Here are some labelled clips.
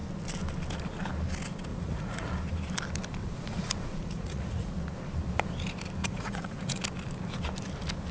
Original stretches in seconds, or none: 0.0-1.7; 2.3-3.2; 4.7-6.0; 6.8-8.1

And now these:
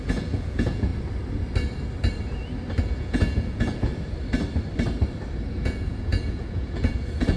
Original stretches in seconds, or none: 0.9-2.8; 3.9-5.5